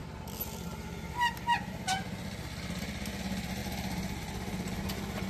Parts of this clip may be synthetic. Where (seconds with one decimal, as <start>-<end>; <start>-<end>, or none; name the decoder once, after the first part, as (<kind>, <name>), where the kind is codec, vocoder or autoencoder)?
none